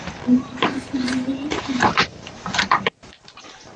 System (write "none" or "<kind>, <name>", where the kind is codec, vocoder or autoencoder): vocoder, BigVGAN v2